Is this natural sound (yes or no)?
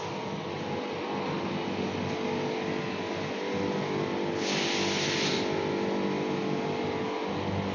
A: yes